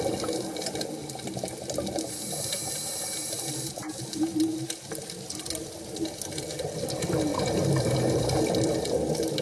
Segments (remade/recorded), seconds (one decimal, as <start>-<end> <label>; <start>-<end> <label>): 0.0-9.4 recorded